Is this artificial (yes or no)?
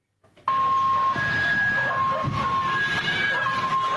no